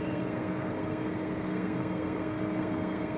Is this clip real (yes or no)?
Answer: no